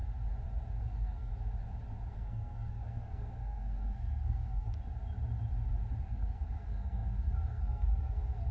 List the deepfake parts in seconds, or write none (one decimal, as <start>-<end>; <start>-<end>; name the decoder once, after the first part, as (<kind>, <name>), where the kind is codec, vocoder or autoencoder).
0.8-1.3 (codec, SNAC); 2.1-4.7; 6.0-8.5